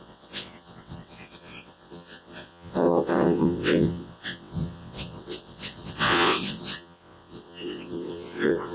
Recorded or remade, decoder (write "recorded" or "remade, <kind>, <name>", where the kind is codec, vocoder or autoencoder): remade, vocoder, WaveNeXt